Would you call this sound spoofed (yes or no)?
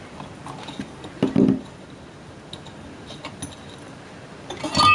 no